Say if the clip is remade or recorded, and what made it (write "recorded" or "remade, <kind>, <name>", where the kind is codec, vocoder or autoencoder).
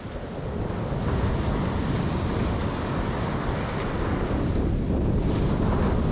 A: recorded